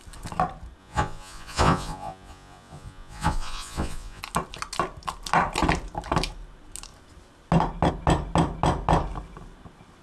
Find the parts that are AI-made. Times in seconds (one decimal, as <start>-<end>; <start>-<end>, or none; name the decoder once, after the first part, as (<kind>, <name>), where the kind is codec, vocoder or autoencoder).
0.8-4.2 (vocoder, Vocos)